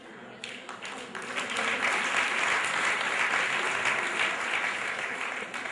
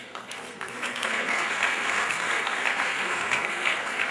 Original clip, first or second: first